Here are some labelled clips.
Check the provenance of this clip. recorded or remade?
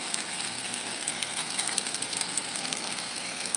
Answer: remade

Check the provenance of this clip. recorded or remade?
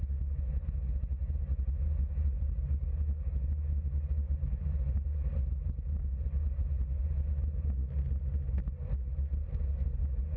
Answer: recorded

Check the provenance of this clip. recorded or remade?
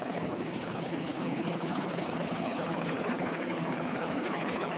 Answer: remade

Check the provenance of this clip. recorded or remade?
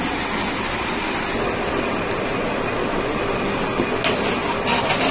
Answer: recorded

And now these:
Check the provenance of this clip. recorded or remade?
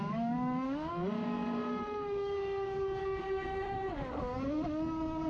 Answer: remade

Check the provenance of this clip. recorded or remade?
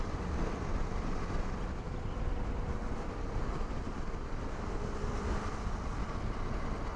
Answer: recorded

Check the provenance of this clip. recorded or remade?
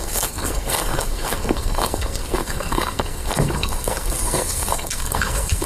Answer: remade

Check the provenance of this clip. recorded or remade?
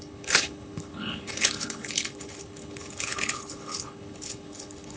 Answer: remade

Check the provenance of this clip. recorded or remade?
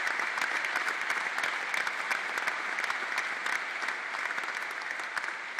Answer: recorded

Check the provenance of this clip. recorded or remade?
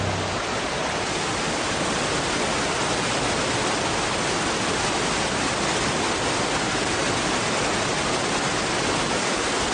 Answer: recorded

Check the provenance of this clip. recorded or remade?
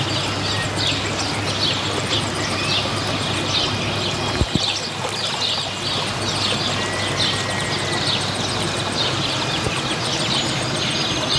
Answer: recorded